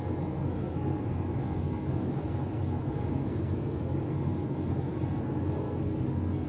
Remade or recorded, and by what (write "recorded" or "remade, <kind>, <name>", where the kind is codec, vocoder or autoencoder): remade, codec, SNAC